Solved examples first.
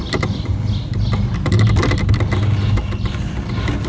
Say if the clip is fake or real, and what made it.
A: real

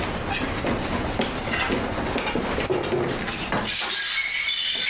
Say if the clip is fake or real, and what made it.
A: real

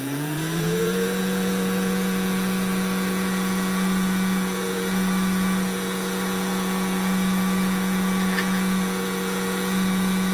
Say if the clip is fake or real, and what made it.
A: fake, vocoder, Vocos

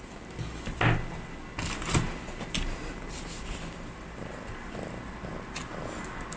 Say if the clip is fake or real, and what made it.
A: real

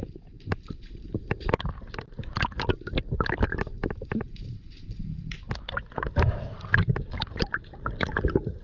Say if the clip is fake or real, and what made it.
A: real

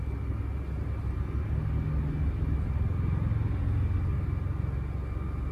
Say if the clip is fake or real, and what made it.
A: real